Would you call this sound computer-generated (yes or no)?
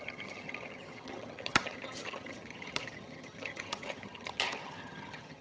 yes